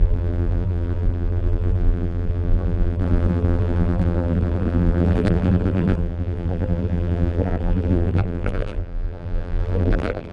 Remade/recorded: remade